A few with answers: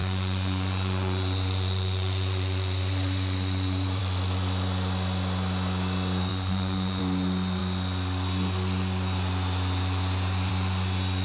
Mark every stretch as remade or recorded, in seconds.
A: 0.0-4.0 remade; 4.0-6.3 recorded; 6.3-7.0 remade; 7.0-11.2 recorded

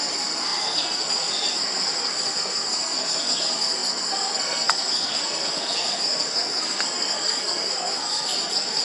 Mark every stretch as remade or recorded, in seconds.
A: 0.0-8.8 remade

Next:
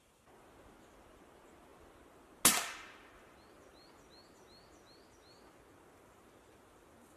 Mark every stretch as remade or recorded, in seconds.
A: 0.0-7.2 recorded

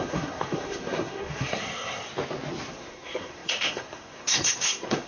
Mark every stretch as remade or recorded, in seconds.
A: 0.0-2.1 remade; 2.1-2.7 recorded; 2.7-5.1 remade